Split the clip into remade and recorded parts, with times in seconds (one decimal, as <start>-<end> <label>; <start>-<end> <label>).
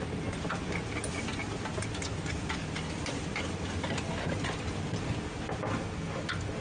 0.0-6.6 recorded